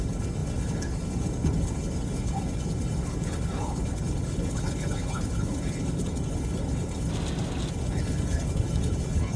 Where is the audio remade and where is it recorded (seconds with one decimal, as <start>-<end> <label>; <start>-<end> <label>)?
0.0-7.1 remade; 7.1-7.7 recorded; 7.7-9.4 remade